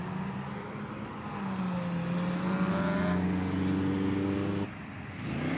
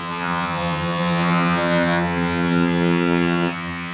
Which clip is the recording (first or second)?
first